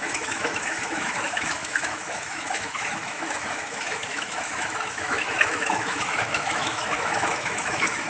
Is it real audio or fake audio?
fake